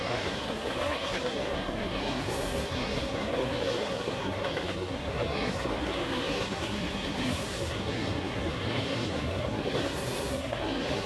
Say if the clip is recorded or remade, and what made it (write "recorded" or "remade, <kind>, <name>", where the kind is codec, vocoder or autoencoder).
remade, codec, SNAC